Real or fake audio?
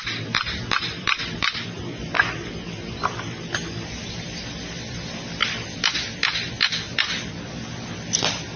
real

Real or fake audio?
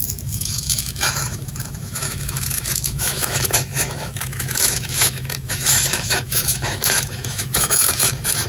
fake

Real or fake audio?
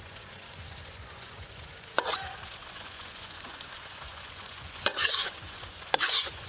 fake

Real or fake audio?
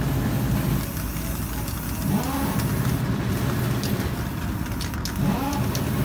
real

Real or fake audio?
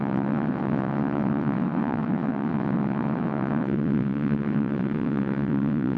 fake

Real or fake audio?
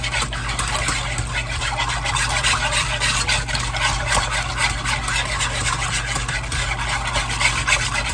real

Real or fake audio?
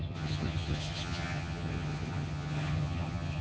fake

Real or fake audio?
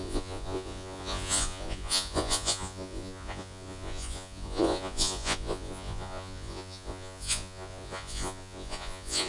fake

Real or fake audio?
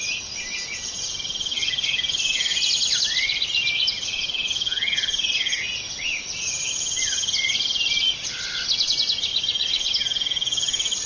real